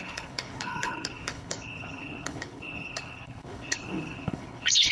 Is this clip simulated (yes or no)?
yes